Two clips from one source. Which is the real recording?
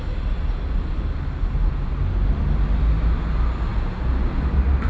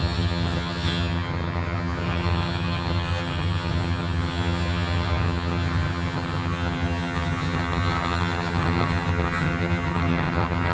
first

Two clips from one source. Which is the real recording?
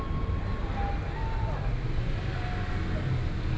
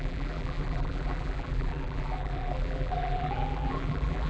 first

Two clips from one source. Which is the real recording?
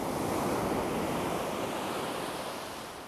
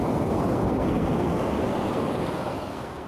first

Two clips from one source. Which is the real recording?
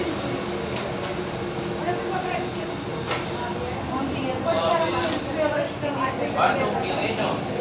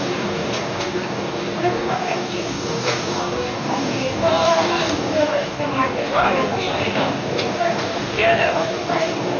first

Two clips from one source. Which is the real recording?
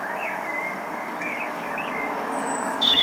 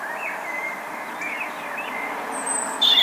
second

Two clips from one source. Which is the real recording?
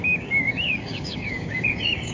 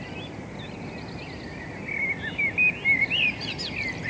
second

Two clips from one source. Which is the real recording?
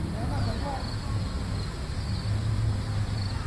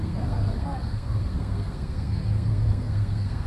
first